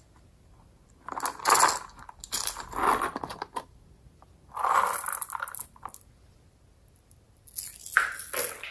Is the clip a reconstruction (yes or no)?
no